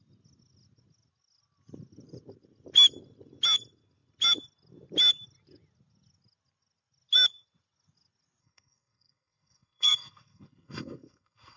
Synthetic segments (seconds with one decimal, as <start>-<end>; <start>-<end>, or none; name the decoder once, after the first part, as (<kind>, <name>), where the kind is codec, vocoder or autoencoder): 8.4-11.6 (codec, SNAC)